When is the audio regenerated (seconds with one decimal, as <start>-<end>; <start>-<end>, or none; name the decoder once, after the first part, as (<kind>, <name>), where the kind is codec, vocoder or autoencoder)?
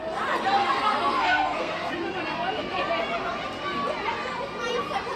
0.6-1.9 (codec, SNAC)